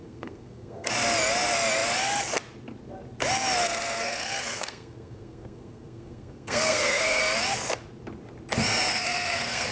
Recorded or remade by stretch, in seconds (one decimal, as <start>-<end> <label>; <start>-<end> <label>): 0.0-0.9 remade; 0.9-3.6 recorded; 3.6-7.2 remade; 7.2-8.9 recorded; 8.9-9.7 remade